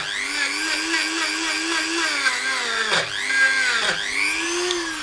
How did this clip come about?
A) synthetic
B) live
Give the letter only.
B